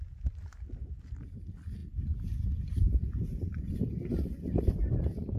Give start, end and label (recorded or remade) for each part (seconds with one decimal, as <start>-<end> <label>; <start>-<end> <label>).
0.0-5.4 recorded